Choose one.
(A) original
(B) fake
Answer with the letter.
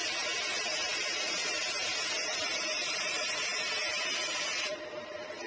B